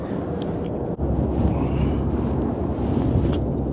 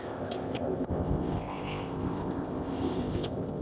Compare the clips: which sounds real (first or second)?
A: first